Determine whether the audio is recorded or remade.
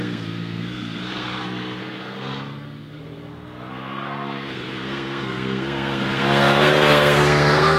remade